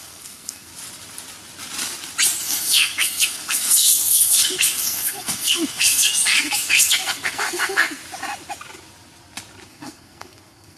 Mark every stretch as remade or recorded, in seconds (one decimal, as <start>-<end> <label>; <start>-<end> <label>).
0.0-0.7 remade; 0.7-2.4 recorded; 2.4-8.0 remade; 8.0-9.7 recorded; 9.7-10.8 remade